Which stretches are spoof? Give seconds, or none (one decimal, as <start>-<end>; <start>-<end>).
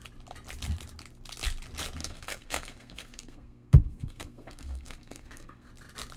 2.0-5.7